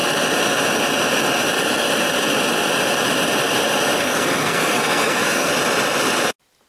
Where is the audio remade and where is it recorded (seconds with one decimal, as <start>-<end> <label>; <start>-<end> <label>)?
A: 0.0-4.0 recorded; 4.0-5.5 remade; 5.5-6.7 recorded